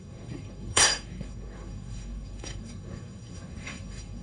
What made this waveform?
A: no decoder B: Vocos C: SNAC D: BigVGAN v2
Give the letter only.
C